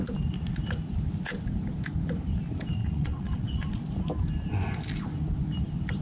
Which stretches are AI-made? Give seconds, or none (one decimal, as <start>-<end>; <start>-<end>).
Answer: 2.8-3.7